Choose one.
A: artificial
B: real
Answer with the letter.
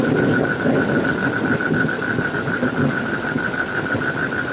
B